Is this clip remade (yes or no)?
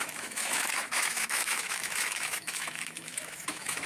yes